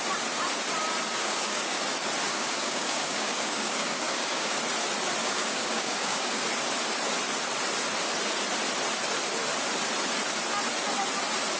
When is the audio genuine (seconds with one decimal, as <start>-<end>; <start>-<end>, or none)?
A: 0.0-1.2; 1.8-2.3; 4.6-5.2; 6.4-11.6